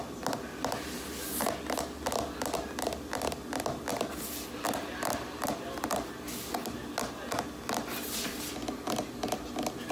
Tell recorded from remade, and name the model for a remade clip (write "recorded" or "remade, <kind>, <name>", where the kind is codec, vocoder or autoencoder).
recorded